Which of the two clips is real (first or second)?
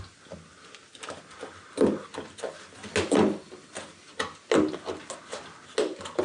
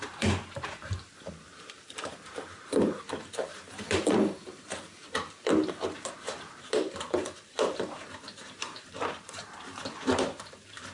first